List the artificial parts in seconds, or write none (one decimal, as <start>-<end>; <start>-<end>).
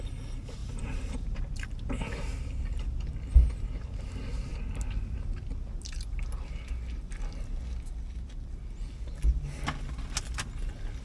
0.6-1.5